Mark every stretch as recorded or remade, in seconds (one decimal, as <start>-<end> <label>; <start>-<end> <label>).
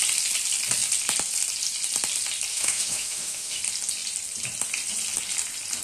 0.0-2.5 recorded; 2.5-3.6 remade; 3.6-5.8 recorded